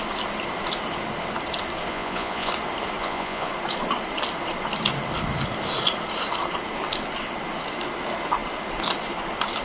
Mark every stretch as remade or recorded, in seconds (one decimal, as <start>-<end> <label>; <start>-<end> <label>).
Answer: 0.0-1.9 recorded; 1.9-2.5 remade; 2.5-3.0 recorded; 3.0-3.5 remade; 3.5-9.6 recorded